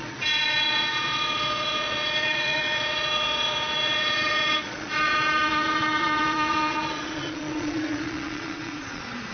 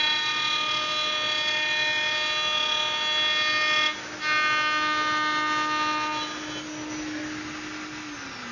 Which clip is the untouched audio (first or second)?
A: second